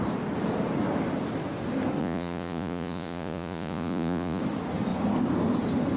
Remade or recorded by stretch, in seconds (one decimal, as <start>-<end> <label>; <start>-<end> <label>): 0.0-2.0 recorded; 2.0-4.4 remade; 4.4-6.0 recorded